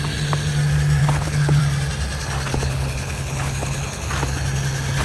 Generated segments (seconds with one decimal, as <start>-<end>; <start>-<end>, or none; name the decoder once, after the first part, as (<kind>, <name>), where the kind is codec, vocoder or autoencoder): 1.0-1.6 (codec, HILCodec); 2.5-4.1